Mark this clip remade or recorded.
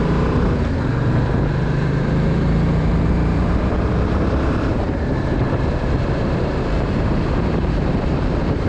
remade